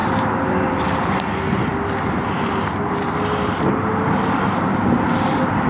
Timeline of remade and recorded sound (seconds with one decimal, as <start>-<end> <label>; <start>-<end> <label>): 0.0-5.7 recorded